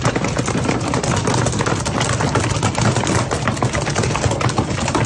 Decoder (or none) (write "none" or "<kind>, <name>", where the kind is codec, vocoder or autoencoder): none